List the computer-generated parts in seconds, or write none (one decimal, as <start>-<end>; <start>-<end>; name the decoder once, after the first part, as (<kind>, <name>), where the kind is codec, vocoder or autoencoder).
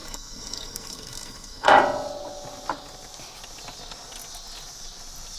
0.0-1.7 (codec, SNAC)